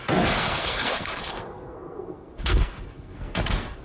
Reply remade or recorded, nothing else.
remade